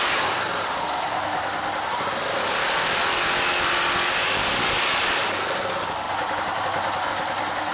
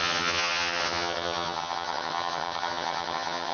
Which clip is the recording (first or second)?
first